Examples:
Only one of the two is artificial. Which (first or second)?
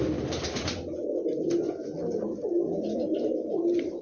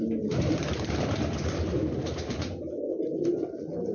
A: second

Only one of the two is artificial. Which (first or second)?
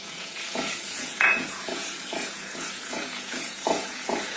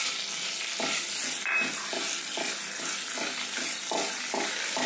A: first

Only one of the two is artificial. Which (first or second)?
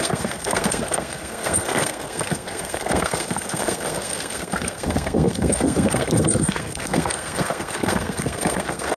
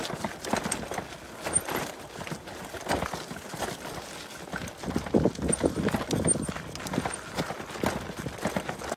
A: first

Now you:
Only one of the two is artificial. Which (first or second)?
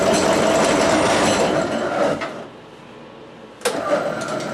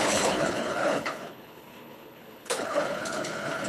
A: second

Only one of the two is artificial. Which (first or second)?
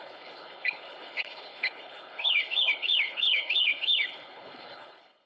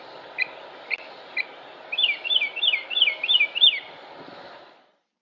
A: first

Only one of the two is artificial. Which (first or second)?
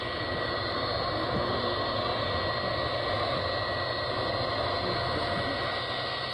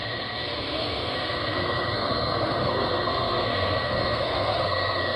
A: second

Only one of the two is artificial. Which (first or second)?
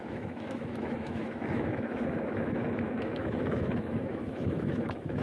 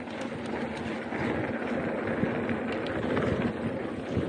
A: first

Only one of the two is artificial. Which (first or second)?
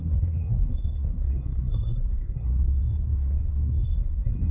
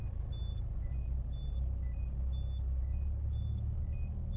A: first